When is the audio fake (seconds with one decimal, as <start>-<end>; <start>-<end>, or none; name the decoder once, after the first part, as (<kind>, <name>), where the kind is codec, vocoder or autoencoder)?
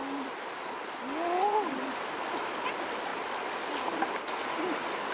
none